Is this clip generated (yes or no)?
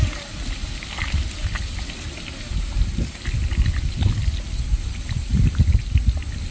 no